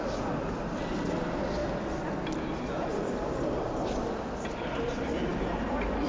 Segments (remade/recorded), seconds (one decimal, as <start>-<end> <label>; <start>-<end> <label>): 0.0-6.1 recorded